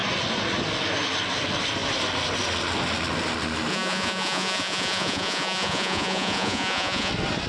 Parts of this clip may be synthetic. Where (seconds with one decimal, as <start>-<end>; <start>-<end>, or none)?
3.7-7.1